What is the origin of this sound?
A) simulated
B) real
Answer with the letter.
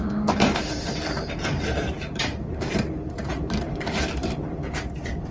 A